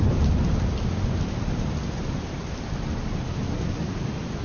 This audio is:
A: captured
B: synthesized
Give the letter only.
A